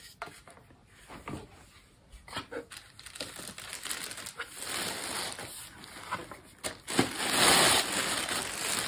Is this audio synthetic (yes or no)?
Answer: no